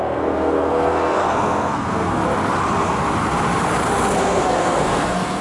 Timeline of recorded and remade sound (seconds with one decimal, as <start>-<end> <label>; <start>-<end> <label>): 0.0-2.2 remade; 2.2-4.2 recorded; 4.2-5.4 remade